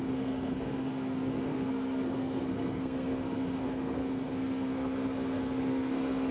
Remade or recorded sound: remade